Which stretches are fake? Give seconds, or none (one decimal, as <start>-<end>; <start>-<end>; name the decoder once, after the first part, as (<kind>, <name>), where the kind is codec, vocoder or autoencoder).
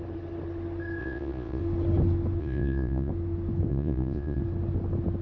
1.0-1.6 (vocoder, Vocos); 2.4-3.1; 3.7-4.4